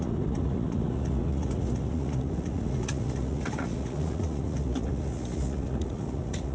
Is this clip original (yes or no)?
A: no